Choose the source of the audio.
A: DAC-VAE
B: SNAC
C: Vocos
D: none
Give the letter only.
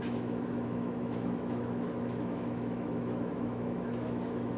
A